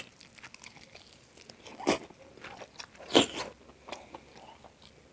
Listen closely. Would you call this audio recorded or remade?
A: recorded